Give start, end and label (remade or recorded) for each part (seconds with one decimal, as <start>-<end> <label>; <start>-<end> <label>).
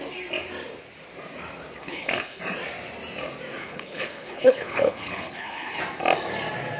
0.0-1.8 recorded; 1.8-2.4 remade; 2.4-3.6 recorded; 3.6-5.8 remade; 5.8-6.8 recorded